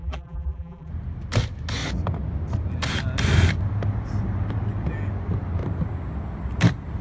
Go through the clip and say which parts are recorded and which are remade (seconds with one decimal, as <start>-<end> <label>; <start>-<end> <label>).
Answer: 0.0-0.9 remade; 0.9-7.0 recorded